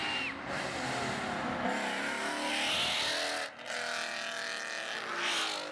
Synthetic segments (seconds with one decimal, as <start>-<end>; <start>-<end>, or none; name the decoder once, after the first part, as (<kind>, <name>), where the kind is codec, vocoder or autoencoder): none